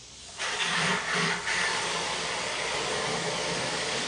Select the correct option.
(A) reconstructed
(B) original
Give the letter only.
A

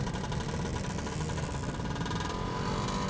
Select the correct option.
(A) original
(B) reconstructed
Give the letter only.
A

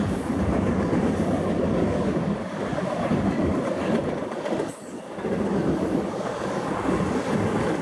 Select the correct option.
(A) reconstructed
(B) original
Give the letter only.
A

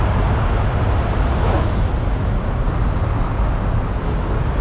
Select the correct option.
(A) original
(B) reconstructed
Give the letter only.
A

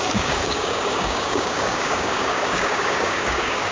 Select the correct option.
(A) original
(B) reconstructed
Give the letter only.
B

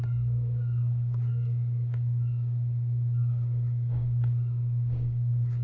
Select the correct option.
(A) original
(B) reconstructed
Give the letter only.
B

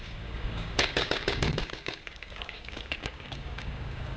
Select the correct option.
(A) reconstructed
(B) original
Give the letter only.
A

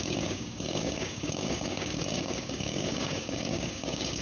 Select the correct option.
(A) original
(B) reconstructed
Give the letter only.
B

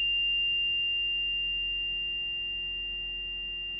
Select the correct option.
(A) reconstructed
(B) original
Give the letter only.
B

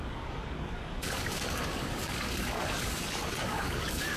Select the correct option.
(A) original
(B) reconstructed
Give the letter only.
B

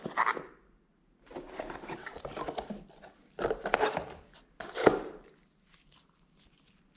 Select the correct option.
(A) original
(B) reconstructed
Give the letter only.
A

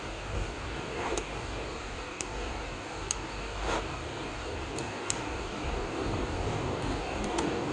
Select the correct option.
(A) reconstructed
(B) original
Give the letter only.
A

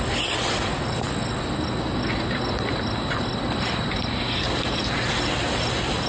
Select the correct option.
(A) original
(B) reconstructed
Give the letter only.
A